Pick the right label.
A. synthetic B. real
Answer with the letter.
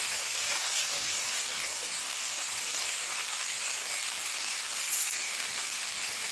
A